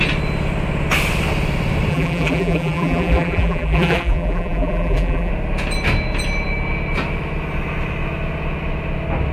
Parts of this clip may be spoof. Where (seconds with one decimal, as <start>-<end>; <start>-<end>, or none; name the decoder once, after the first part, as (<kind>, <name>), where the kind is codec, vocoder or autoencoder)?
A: 1.9-5.3 (vocoder, BigVGAN v2)